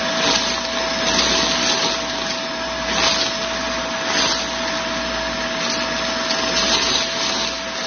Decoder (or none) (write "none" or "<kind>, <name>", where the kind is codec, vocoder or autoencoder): none